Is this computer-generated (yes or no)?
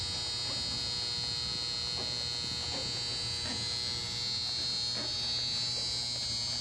no